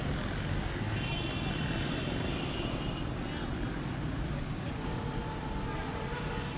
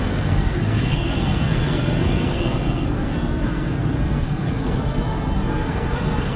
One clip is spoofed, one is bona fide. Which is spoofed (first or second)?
second